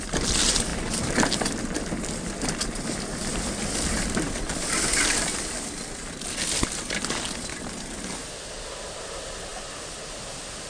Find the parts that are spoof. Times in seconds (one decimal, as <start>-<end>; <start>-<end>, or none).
none